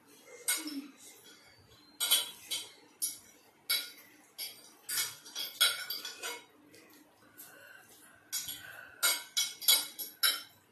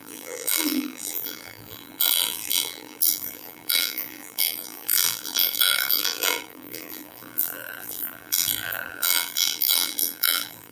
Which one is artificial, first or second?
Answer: second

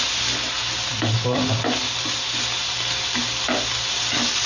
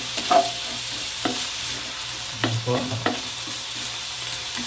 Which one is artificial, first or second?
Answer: second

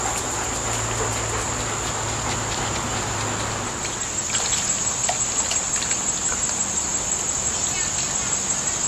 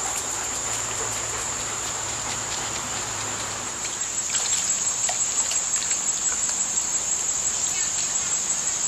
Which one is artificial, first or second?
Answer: second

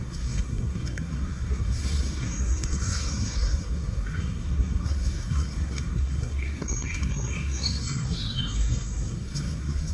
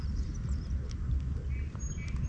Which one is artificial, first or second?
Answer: first